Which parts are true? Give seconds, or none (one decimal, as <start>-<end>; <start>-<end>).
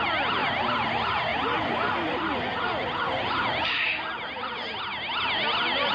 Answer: 0.0-5.9